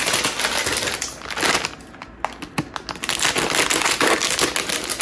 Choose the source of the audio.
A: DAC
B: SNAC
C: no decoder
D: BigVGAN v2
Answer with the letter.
C